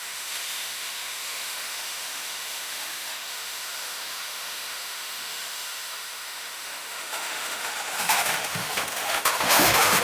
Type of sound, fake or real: fake